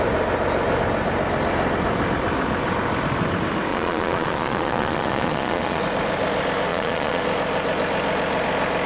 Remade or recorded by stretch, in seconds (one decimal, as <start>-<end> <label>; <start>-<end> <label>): 0.0-3.7 recorded; 3.7-5.8 remade; 5.8-6.7 recorded; 6.7-7.2 remade; 7.2-8.9 recorded